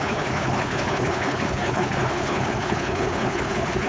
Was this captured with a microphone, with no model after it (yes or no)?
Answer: no